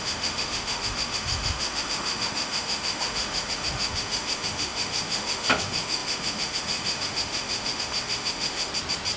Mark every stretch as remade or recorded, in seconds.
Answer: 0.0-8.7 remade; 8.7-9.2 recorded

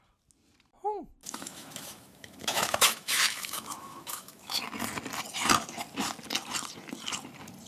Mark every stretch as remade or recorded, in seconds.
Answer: 0.0-1.2 recorded; 1.2-4.6 remade; 4.6-7.7 recorded

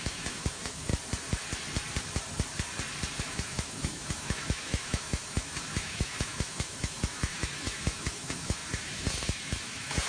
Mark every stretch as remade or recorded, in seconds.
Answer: 0.0-0.9 remade; 0.9-3.2 recorded; 3.2-10.1 remade

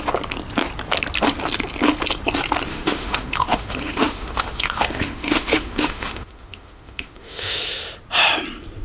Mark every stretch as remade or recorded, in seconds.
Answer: 0.0-2.7 recorded; 2.7-7.6 remade; 7.6-8.8 recorded

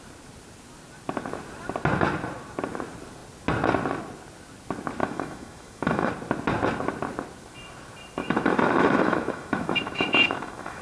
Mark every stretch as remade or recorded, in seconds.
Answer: 0.0-5.0 recorded; 5.0-6.1 remade; 6.1-8.2 recorded; 8.2-10.8 remade